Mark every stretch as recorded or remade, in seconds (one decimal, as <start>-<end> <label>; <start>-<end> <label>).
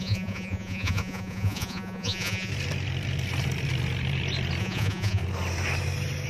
0.0-2.5 remade; 2.5-4.6 recorded; 4.6-5.2 remade; 5.2-6.3 recorded